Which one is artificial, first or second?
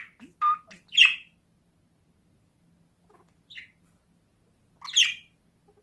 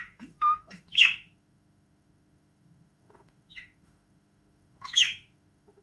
second